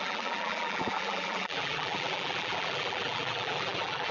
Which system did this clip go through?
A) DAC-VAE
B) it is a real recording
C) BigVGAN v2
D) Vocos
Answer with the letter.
C